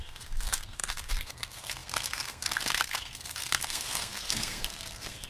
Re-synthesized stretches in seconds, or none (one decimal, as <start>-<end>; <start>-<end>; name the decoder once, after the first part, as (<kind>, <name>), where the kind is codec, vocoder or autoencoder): 0.0-5.3 (codec, SNAC)